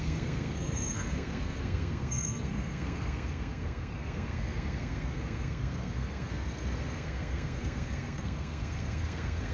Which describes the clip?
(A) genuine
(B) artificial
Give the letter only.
B